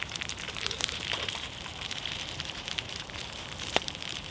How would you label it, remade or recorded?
remade